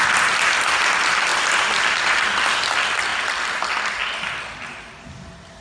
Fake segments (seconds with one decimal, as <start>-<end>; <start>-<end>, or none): none